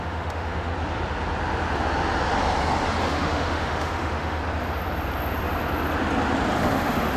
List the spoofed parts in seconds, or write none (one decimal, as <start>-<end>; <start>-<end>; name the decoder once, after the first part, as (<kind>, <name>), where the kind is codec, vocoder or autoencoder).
0.0-0.7 (autoencoder, DAC-VAE); 3.0-4.4; 6.6-7.2